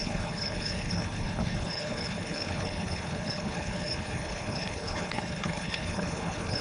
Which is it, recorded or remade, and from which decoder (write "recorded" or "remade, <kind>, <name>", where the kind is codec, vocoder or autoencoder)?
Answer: remade, codec, HILCodec